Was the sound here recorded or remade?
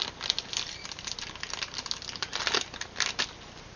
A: recorded